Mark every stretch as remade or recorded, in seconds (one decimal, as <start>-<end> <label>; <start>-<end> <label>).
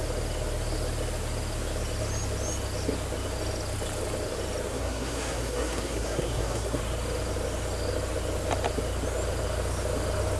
0.0-4.7 recorded; 4.7-6.8 remade; 6.8-10.4 recorded